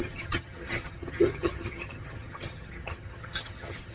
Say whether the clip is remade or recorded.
remade